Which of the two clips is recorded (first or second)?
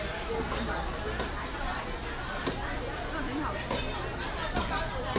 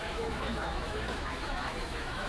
first